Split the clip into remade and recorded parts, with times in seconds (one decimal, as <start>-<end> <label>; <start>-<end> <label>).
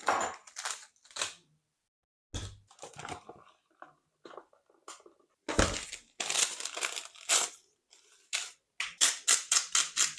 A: 0.0-10.2 recorded